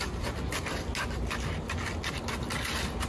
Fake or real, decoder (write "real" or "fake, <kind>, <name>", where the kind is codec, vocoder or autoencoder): real